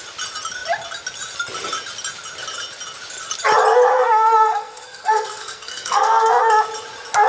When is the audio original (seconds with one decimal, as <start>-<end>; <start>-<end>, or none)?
0.0-3.9; 6.5-7.3